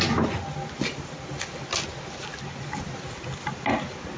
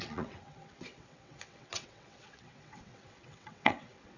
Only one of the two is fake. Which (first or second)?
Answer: second